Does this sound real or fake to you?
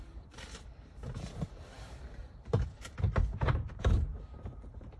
fake